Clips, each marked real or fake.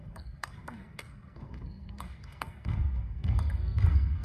fake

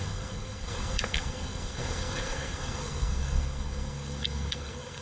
fake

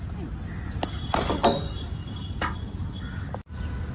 real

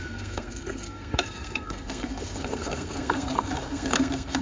fake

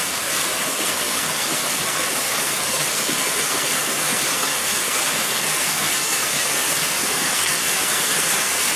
fake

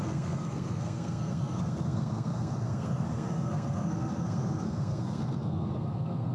fake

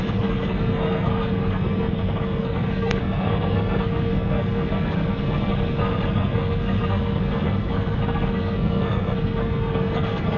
fake